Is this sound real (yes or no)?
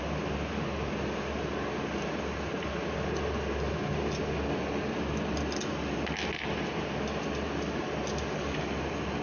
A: yes